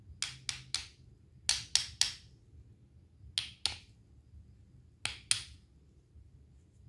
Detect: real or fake real